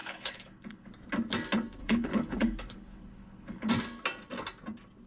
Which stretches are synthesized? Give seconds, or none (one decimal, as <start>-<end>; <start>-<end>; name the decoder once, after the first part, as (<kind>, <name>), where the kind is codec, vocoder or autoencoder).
0.0-0.9 (codec, HILCodec); 1.8-3.7

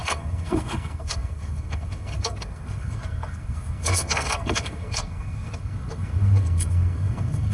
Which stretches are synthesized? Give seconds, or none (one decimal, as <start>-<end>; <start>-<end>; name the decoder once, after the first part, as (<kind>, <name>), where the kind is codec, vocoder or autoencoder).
0.0-7.5 (codec, SNAC)

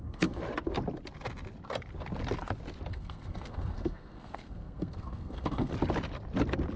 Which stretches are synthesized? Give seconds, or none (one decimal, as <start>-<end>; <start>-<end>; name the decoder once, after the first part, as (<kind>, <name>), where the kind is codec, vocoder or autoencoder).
0.0-0.4 (codec, SNAC); 2.9-5.7